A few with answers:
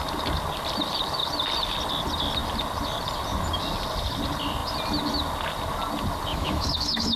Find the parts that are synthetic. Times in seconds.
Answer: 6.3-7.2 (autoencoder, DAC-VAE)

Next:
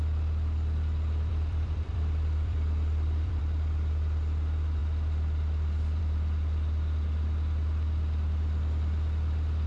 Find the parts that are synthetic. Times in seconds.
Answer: 1.3-3.4 (vocoder, BigVGAN v2)

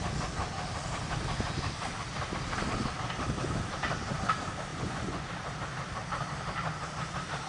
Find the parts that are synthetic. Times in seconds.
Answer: 4.7-5.3 (vocoder, Vocos)

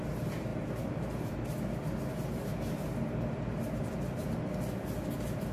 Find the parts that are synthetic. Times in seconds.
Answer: none

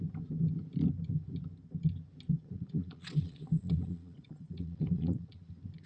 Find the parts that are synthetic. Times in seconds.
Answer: 2.4-5.4 (vocoder, Vocos)

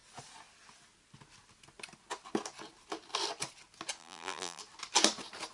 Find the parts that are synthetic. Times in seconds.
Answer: 4.0-4.6 (vocoder, BigVGAN v2)

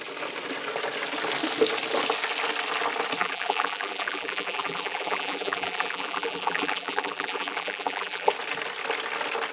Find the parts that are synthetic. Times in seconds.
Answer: 3.2-8.3 (vocoder, BigVGAN v2)